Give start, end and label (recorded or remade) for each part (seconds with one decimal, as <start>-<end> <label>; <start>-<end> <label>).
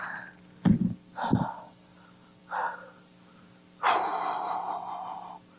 0.0-5.6 recorded